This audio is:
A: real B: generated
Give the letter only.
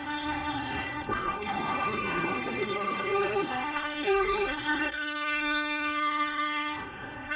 B